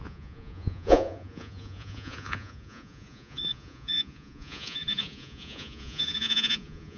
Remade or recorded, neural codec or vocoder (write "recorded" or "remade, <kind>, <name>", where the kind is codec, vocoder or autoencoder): remade, vocoder, Vocos